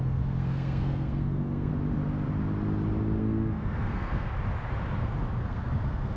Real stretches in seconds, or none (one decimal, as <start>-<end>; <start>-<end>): 1.7-3.2; 4.3-5.4